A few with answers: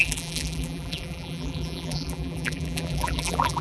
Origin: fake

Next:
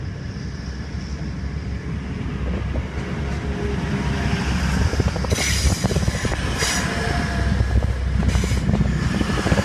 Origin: real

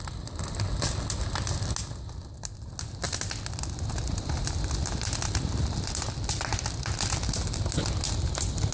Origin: real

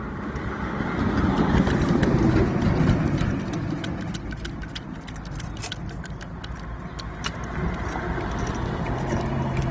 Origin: real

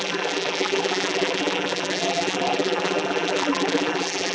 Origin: fake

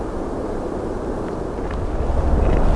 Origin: real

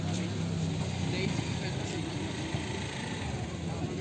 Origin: real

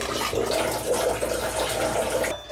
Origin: real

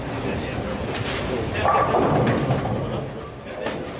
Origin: real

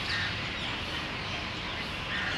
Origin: real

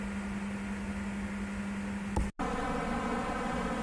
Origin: real